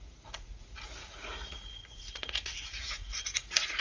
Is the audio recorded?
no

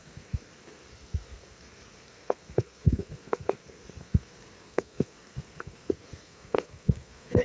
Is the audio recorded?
no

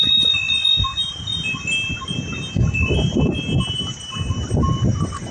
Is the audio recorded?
yes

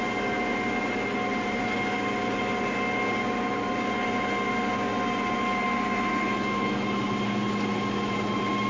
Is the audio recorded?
yes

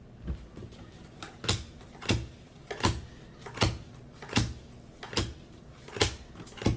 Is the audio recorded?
yes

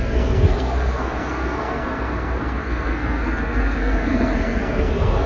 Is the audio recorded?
no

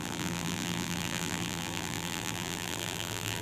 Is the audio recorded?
no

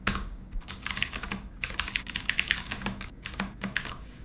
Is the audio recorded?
no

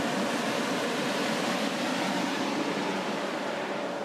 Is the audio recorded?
no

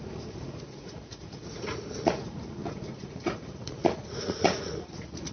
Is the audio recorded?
no